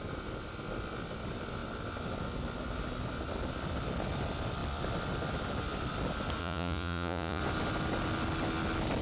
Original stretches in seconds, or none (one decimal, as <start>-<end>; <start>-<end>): 0.0-6.4; 7.4-9.0